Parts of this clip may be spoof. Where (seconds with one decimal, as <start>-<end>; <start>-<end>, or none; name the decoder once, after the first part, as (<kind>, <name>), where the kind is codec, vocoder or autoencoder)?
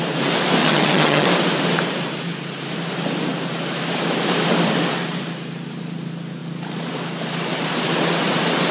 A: 0.6-1.3 (vocoder, HiFi-GAN)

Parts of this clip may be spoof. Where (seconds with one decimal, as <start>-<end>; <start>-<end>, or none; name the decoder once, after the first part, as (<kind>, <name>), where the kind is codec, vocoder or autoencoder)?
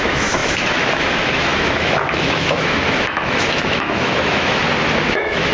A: 0.0-4.6 (autoencoder, DAC-VAE); 5.1-5.5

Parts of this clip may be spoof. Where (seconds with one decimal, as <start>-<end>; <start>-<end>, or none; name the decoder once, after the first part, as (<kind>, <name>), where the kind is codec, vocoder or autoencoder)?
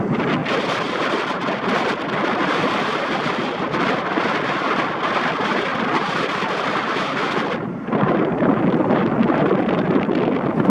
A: 0.4-3.1 (vocoder, BigVGAN v2); 5.7-6.3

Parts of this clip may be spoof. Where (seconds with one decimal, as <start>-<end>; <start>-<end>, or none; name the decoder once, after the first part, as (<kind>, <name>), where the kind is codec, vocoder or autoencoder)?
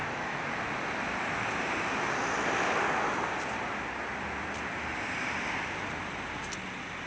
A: 0.0-0.5 (autoencoder, DAC-VAE)